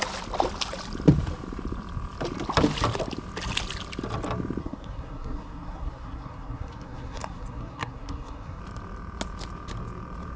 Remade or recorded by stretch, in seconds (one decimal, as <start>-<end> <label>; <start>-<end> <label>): 0.0-4.6 recorded; 4.6-8.6 remade; 8.6-10.4 recorded